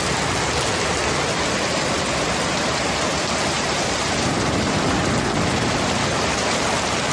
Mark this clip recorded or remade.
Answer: recorded